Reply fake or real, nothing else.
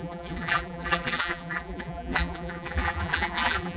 fake